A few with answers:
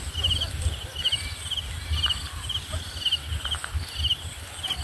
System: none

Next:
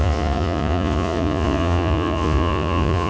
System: vocoder, Vocos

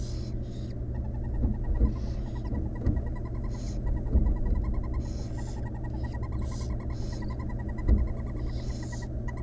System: none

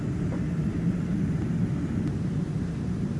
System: none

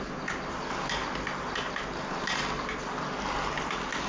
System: none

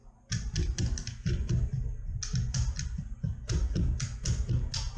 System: none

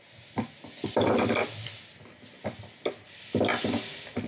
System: none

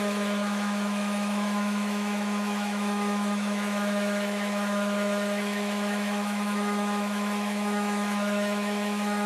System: autoencoder, DAC-VAE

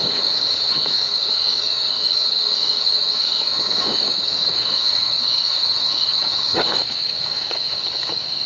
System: codec, DAC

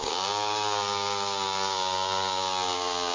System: codec, DAC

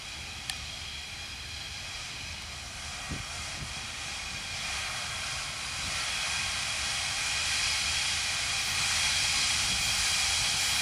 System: none